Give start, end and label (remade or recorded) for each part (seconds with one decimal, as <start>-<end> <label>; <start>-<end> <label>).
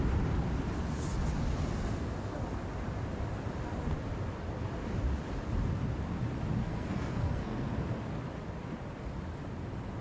0.0-6.6 recorded; 6.6-7.7 remade; 7.7-10.0 recorded